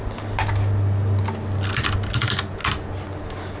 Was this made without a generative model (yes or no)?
yes